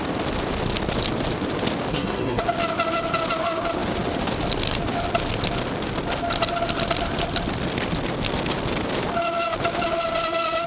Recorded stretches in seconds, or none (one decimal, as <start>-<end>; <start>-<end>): 0.0-1.9; 2.4-10.7